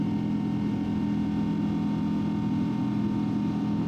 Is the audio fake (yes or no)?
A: no